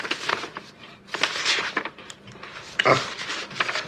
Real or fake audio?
fake